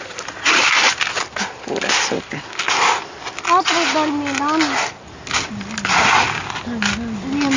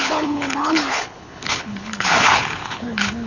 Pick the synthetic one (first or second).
second